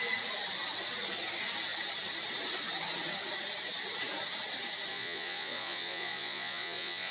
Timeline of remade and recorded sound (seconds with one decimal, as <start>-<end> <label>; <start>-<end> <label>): 0.0-4.9 recorded; 4.9-7.1 remade